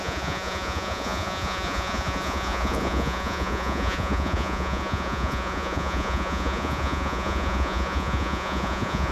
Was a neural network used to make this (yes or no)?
yes